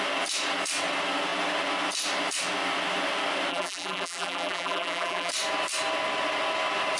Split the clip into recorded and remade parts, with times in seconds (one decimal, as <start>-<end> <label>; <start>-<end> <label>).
0.0-3.5 recorded; 3.5-5.3 remade; 5.3-7.0 recorded